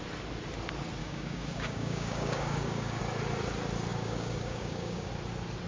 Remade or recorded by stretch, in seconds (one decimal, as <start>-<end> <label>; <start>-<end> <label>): 0.0-1.0 recorded; 1.0-3.0 remade; 3.0-3.9 recorded; 3.9-5.1 remade; 5.1-5.7 recorded